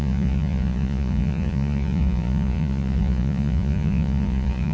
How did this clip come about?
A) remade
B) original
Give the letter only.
A